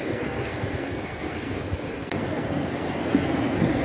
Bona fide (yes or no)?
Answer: no